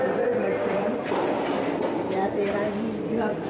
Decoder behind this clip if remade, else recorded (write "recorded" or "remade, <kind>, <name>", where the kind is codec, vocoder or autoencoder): recorded